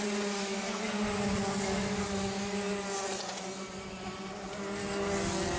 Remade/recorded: recorded